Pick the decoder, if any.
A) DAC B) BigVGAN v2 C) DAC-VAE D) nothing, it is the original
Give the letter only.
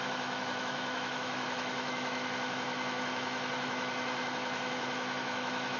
C